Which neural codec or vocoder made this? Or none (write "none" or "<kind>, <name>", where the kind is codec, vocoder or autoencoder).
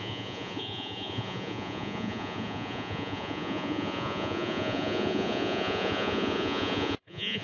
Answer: vocoder, Vocos